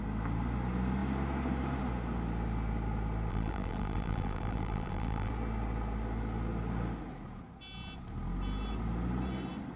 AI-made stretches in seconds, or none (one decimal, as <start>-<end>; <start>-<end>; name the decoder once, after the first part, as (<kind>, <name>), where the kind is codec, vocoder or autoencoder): 3.3-5.3 (vocoder, BigVGAN v2)